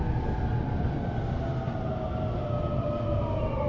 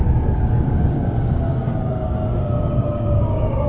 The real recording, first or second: first